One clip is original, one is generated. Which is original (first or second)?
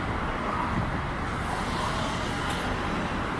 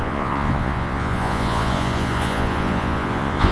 first